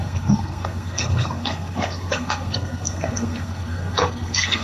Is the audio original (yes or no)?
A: no